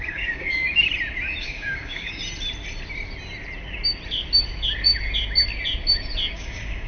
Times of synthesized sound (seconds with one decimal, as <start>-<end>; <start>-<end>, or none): 0.0-0.9; 1.4-2.2; 6.3-6.9